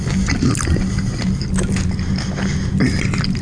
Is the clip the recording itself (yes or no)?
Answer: yes